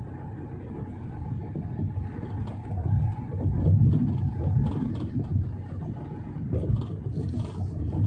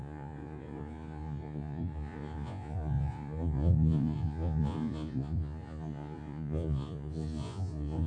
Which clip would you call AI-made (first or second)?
second